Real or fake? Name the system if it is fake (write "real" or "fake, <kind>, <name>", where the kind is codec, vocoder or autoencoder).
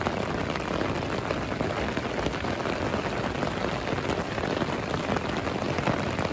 real